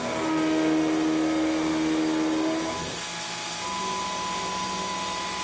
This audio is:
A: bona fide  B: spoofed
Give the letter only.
A